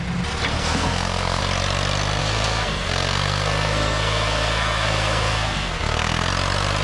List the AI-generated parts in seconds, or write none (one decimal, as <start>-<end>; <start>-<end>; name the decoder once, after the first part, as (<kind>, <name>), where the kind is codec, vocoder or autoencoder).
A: 0.5-1.4 (codec, SNAC); 2.2-6.3